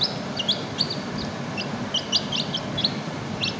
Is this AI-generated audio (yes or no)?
no